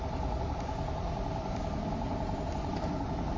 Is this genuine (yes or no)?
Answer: yes